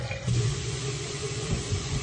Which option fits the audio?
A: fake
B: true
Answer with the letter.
A